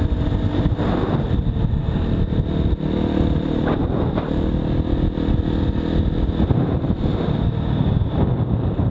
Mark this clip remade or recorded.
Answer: recorded